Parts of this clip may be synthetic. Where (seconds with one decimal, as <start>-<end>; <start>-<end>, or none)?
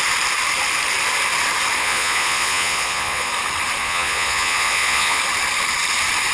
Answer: 1.8-3.3; 3.8-5.2